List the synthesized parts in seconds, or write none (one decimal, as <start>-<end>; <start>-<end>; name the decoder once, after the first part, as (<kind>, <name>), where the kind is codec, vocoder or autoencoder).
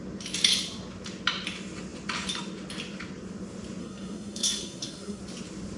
3.8-5.2 (codec, SNAC)